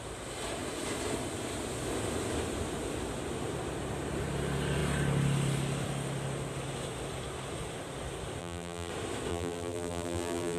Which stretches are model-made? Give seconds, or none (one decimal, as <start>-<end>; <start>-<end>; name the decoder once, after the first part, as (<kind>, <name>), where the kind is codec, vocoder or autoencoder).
8.4-8.9 (vocoder, BigVGAN v2); 9.3-10.6